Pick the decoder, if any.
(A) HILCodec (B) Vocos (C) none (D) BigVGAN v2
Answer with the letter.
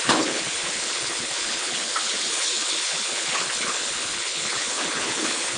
A